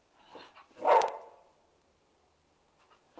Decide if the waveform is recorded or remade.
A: recorded